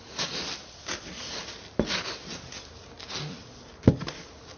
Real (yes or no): yes